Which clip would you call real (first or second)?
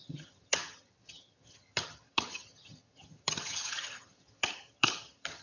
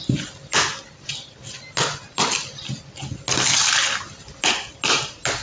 second